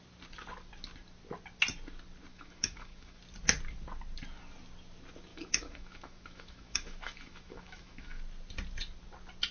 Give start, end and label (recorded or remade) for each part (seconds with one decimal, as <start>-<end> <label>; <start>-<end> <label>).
0.0-2.3 recorded; 2.3-3.2 remade; 3.2-5.3 recorded; 5.3-8.2 remade; 8.2-9.5 recorded